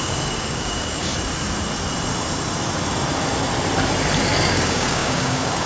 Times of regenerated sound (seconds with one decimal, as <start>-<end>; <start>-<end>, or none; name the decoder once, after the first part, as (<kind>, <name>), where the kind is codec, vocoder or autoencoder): 0.0-1.1 (codec, DAC); 4.5-5.7